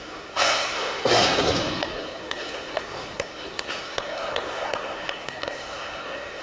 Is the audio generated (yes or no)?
yes